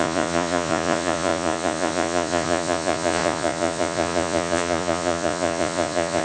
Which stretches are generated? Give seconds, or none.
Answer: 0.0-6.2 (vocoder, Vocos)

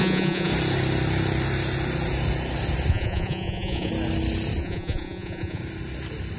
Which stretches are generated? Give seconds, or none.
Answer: 0.0-0.5 (vocoder, Vocos); 2.9-3.9; 4.6-5.6

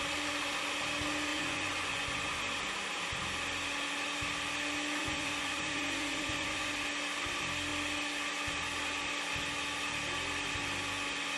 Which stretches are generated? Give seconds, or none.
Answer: 1.3-2.4 (vocoder, Vocos); 5.0-6.7

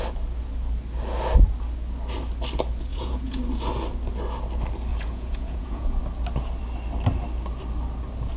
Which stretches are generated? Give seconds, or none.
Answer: 2.9-3.4 (vocoder, Vocos); 4.9-6.0

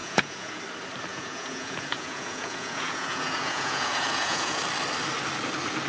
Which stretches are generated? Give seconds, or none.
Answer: 0.0-0.6 (vocoder, Vocos); 1.1-4.6

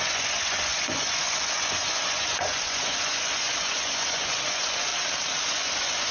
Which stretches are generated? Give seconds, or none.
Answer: 0.0-4.9 (vocoder, Vocos); 5.4-6.1